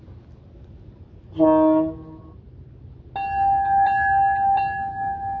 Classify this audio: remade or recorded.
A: recorded